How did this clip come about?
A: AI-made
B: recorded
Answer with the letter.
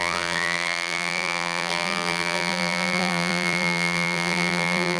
A